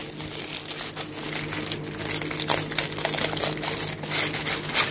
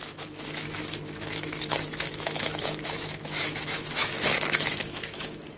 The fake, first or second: second